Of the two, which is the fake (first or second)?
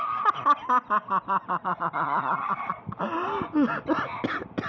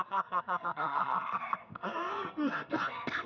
second